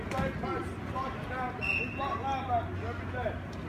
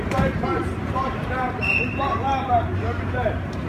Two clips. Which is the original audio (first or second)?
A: first